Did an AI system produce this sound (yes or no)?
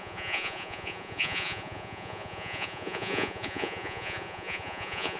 yes